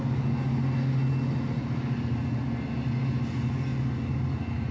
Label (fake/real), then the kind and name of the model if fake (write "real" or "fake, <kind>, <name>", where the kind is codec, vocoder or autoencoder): real